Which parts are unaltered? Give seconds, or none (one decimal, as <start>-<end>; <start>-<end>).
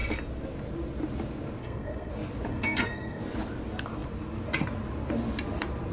0.0-1.6; 2.1-2.5; 3.2-5.9